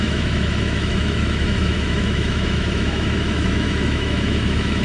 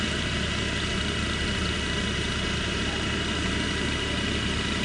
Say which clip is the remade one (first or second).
first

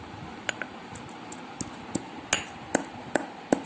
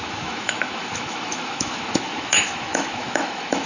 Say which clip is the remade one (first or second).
second